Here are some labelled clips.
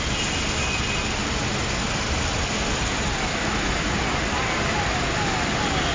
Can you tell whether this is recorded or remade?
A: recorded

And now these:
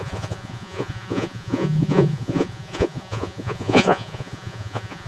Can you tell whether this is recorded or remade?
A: remade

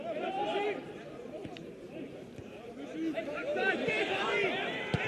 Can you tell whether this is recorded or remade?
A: remade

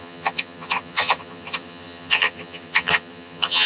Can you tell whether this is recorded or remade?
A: remade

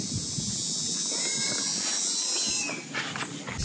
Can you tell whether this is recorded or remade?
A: recorded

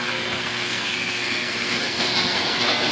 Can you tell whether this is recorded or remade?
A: remade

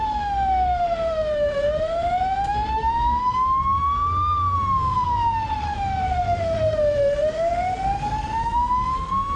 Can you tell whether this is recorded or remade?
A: remade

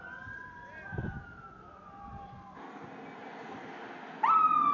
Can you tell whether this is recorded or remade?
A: recorded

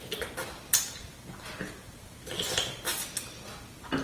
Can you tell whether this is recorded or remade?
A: recorded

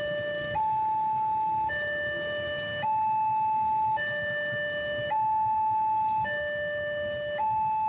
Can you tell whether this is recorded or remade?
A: recorded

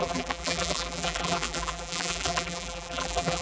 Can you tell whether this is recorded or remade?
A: remade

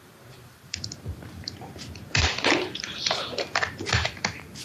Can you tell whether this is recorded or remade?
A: remade